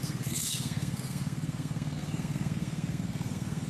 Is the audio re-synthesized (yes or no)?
yes